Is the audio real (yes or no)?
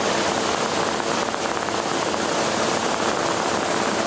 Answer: yes